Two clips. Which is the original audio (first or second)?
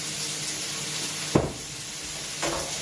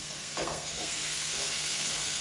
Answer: first